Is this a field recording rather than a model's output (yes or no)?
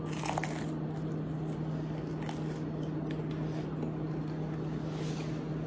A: yes